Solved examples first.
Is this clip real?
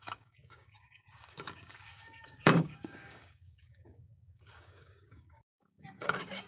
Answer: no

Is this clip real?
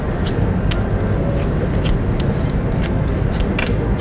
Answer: yes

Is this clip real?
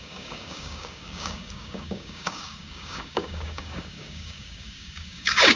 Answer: no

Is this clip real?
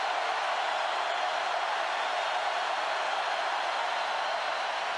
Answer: yes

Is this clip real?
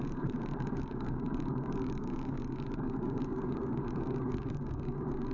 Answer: no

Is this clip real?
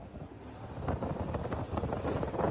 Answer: yes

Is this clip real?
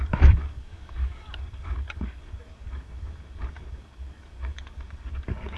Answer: no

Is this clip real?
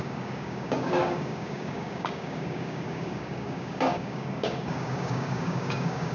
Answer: no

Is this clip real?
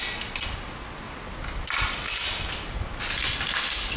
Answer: yes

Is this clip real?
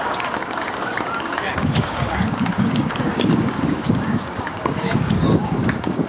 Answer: no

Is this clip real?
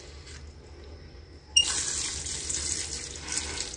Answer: yes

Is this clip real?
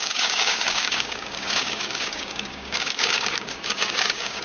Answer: no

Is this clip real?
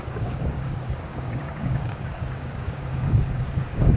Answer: no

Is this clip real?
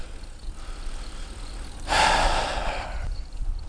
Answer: yes